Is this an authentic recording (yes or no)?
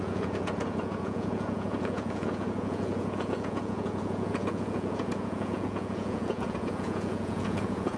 no